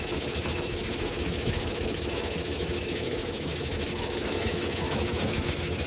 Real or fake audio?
fake